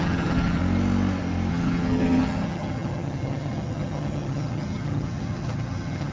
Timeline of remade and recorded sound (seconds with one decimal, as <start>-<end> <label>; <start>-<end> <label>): 0.0-0.6 remade; 0.6-1.5 recorded; 1.5-6.1 remade